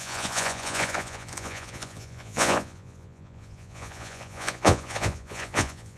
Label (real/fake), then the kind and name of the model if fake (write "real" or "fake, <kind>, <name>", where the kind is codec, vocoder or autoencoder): fake, vocoder, Vocos